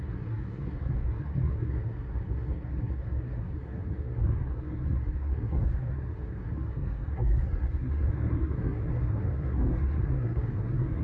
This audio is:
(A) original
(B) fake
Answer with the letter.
B